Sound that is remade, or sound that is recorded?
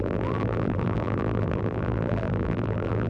remade